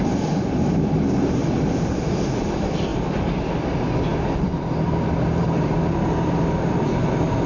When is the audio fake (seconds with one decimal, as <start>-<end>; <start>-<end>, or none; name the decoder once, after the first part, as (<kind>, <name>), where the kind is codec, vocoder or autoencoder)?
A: 0.0-1.4 (vocoder, BigVGAN v2); 2.0-7.5